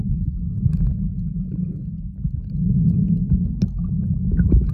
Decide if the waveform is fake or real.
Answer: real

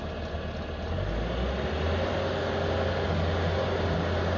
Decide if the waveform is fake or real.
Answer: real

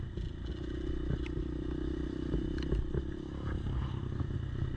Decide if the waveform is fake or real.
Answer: real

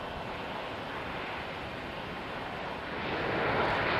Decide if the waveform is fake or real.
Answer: real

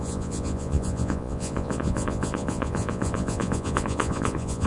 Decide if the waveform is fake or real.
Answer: fake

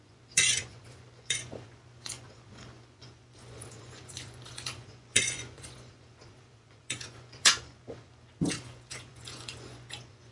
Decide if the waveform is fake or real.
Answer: fake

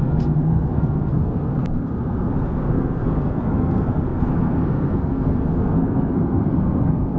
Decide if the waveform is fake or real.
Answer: fake